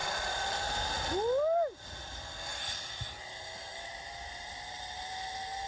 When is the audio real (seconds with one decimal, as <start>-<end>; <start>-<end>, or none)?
0.6-2.5; 3.2-5.7